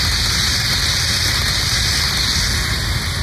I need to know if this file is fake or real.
real